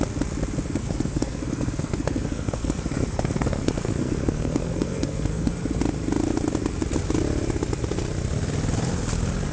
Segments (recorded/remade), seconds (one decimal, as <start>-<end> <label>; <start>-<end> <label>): 0.0-0.8 recorded; 0.8-5.5 remade; 5.5-9.5 recorded